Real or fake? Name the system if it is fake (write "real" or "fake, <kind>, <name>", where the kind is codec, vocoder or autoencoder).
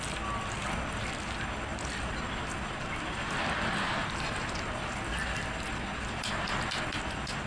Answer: real